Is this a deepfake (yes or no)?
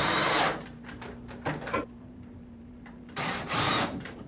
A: yes